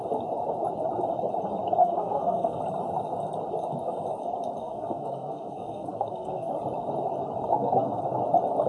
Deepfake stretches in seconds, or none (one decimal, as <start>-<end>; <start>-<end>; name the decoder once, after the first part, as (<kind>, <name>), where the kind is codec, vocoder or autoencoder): 1.8-2.6 (codec, SNAC); 4.6-6.5; 7.5-8.0